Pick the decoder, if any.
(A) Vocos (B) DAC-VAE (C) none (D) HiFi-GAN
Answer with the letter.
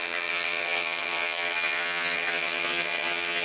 D